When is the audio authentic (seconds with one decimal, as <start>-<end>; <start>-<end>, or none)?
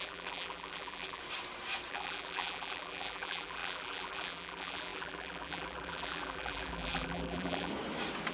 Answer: 1.2-1.9; 7.7-8.3